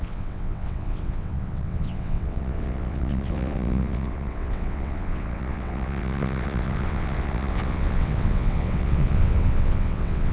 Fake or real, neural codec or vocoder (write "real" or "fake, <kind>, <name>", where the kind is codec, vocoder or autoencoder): fake, vocoder, WaveNeXt